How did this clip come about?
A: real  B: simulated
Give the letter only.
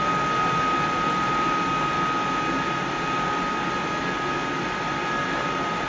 A